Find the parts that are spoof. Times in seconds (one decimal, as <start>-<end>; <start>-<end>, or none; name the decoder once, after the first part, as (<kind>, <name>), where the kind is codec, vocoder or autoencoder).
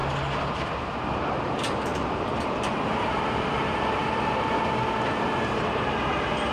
0.5-6.5 (vocoder, BigVGAN v2)